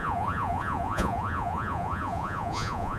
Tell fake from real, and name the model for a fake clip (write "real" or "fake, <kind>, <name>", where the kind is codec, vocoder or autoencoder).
fake, vocoder, Vocos